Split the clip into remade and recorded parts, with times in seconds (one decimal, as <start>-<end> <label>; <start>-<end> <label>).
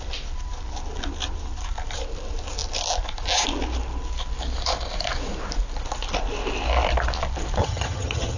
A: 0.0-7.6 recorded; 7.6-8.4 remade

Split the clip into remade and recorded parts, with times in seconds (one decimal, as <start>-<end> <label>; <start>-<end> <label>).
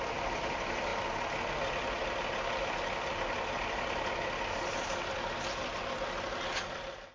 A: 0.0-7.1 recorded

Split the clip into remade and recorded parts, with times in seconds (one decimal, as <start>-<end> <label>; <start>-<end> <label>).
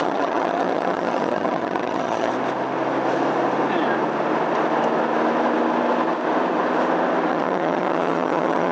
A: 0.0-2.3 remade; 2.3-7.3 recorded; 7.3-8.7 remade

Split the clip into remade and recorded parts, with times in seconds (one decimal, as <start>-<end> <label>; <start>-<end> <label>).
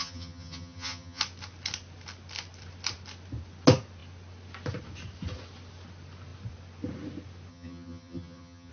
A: 0.0-1.2 remade; 1.2-7.5 recorded; 7.5-8.7 remade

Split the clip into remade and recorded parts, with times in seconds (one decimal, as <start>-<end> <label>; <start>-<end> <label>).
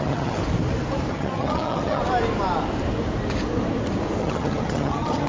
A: 0.0-0.4 remade; 0.4-1.1 recorded; 1.1-2.0 remade; 2.0-4.2 recorded; 4.2-5.3 remade